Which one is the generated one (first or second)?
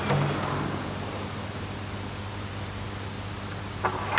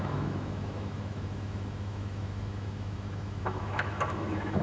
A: second